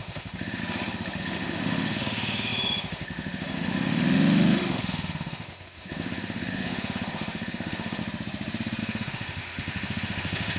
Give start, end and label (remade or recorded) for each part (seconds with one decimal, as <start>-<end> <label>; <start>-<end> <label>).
0.0-0.6 remade; 0.6-1.2 recorded; 1.2-8.0 remade; 8.0-8.8 recorded; 8.8-10.6 remade